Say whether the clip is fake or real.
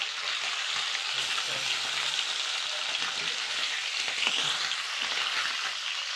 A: real